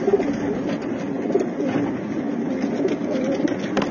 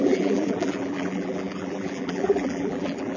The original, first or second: first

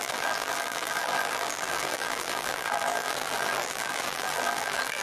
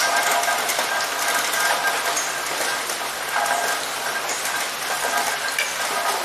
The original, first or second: second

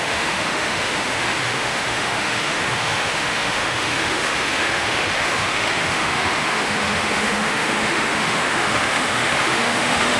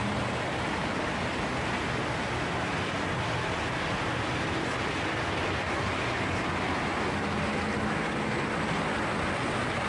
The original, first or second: second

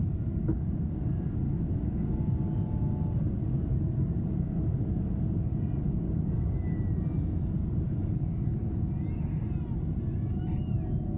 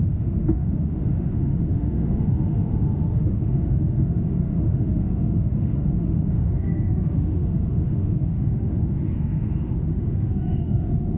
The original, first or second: first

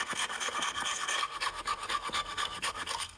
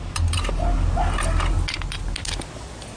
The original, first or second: second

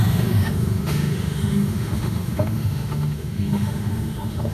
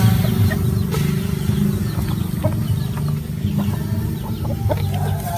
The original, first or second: second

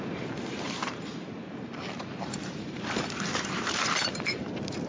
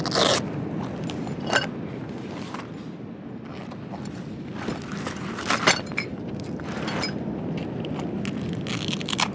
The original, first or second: second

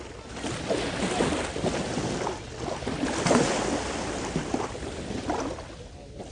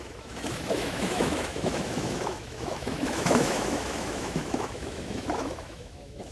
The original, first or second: first